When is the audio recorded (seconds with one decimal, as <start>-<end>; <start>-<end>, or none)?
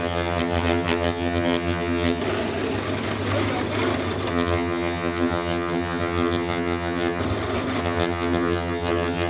2.2-4.3; 7.2-7.8